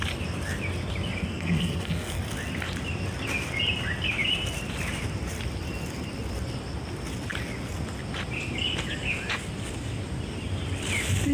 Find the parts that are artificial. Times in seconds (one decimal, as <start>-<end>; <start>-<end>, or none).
1.2-2.2